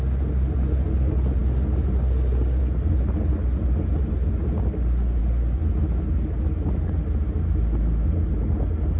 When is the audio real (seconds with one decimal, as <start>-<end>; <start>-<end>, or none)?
0.0-9.0